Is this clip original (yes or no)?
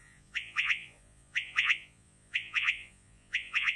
no